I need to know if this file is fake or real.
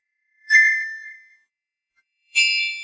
fake